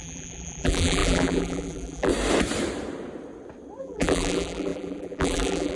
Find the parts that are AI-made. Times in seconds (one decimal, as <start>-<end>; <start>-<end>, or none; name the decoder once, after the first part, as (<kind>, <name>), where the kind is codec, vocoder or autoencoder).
0.0-2.1 (vocoder, BigVGAN v2); 3.8-5.8